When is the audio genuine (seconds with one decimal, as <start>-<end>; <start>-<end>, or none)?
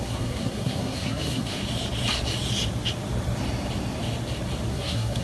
1.6-4.7